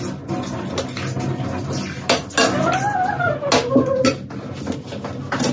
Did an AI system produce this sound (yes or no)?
no